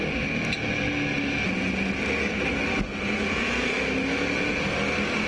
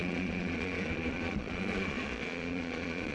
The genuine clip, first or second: first